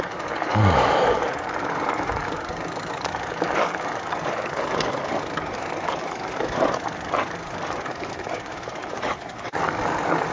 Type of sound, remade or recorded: remade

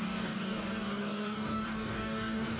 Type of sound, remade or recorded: remade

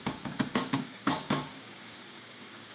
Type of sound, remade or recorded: remade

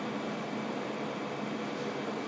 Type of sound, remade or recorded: recorded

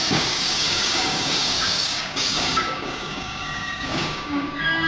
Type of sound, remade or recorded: remade